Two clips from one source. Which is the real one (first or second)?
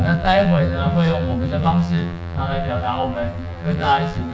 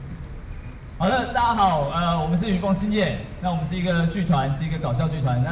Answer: second